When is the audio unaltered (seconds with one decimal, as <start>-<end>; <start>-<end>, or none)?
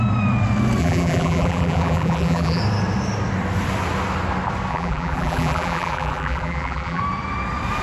0.0-0.8; 2.6-4.7; 7.0-7.8